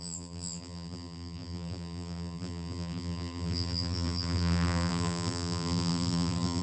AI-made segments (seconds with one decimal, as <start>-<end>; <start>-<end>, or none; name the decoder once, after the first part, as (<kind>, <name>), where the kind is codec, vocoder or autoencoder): 0.0-6.6 (vocoder, BigVGAN v2)